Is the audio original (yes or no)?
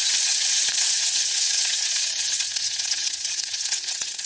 no